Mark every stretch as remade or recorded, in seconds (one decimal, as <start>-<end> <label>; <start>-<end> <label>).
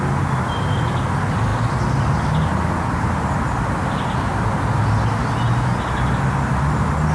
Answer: 0.0-7.1 recorded